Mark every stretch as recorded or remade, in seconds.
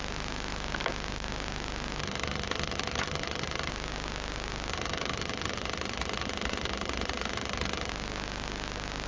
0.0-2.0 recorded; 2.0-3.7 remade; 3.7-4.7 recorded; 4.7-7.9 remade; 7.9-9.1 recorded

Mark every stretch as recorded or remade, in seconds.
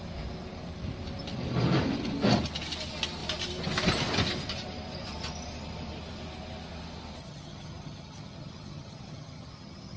0.0-7.2 recorded; 7.2-10.0 remade